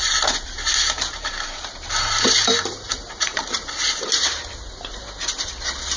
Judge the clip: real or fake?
fake